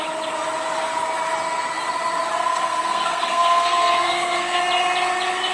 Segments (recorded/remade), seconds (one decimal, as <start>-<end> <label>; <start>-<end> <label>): 0.0-2.3 recorded; 2.3-4.6 remade; 4.6-5.5 recorded